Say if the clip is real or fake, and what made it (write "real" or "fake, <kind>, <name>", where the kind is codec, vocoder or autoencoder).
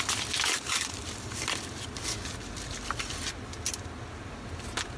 fake, vocoder, BigVGAN v2